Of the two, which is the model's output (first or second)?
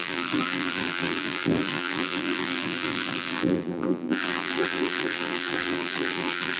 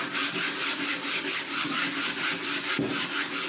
first